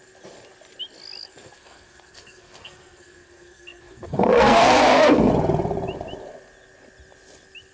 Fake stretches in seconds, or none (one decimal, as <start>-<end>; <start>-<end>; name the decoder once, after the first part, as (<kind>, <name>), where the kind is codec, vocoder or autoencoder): 1.2-5.3 (codec, SNAC)